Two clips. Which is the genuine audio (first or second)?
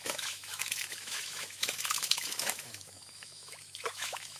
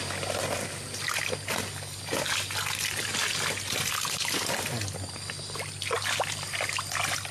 second